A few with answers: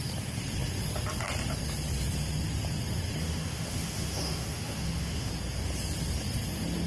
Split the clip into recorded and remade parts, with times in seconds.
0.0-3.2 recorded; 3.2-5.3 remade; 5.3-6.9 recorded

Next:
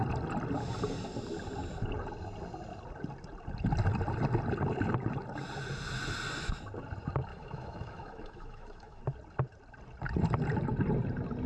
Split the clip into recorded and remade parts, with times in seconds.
0.0-7.3 recorded; 7.3-9.0 remade; 9.0-11.5 recorded

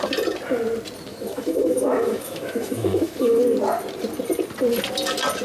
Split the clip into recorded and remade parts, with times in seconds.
0.0-1.1 recorded; 1.1-3.4 remade; 3.4-5.4 recorded

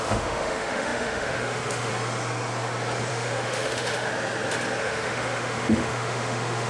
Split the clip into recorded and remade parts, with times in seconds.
0.0-1.9 remade; 1.9-3.1 recorded; 3.1-4.1 remade; 4.1-4.8 recorded; 4.8-6.7 remade

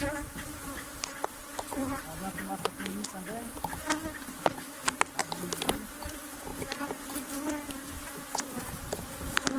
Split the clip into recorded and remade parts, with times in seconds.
0.0-9.6 recorded

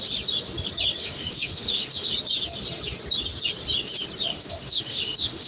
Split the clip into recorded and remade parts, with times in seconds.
0.0-1.0 recorded; 1.0-2.1 remade; 2.1-4.3 recorded; 4.3-5.5 remade

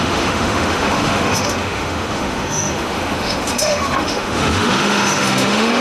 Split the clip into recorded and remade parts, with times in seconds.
0.0-5.8 remade